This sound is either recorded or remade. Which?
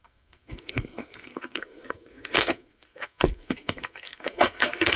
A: remade